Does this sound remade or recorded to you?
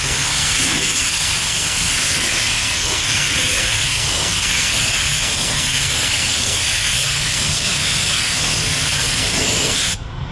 remade